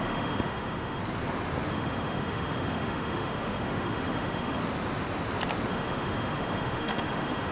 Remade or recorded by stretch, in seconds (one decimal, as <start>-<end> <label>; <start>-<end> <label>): 0.0-1.0 remade; 1.0-1.7 recorded; 1.7-4.6 remade; 4.6-5.7 recorded; 5.7-7.5 remade